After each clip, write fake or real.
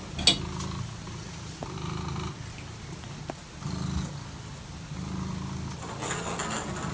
real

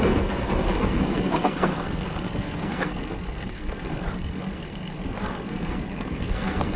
fake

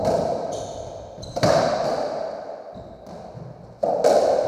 real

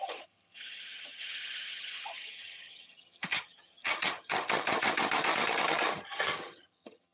fake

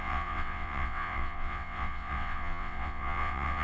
fake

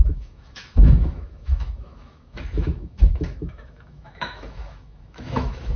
fake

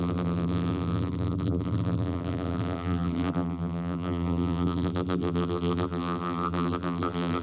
fake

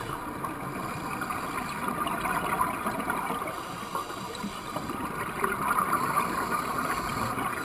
real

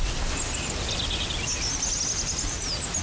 real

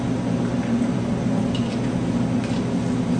real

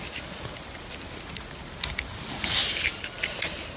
real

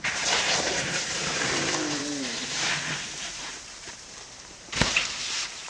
fake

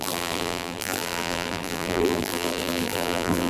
fake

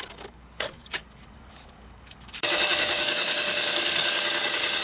fake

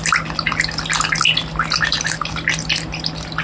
real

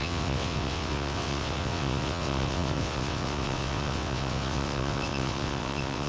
fake